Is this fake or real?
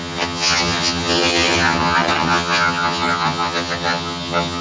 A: fake